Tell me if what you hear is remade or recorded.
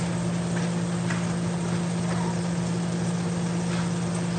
recorded